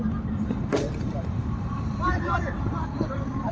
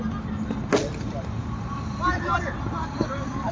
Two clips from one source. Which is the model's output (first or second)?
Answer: first